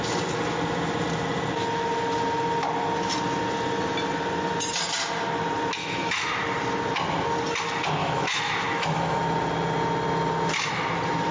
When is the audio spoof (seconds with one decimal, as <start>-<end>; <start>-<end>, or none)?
5.8-6.3; 8.0-9.2